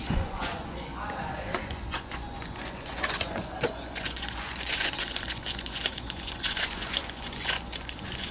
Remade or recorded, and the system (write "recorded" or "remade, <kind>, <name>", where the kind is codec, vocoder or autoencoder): remade, vocoder, Vocos